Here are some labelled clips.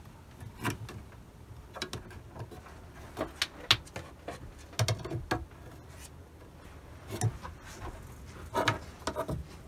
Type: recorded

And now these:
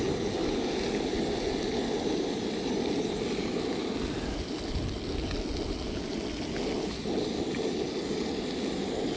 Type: recorded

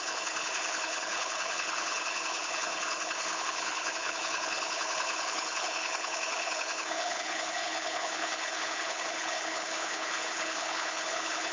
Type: remade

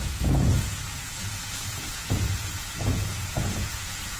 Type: remade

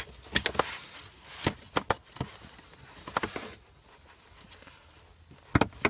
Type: recorded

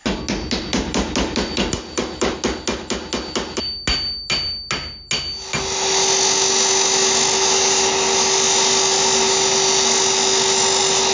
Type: recorded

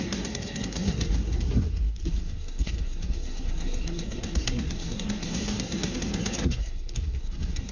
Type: remade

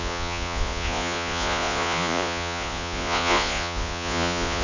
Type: remade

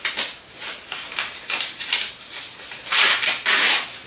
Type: recorded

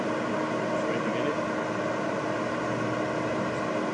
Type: recorded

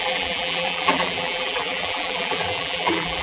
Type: remade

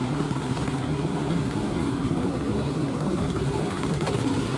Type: remade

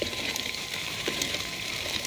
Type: remade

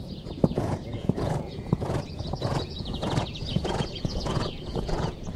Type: remade